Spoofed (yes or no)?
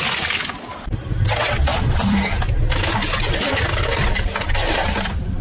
yes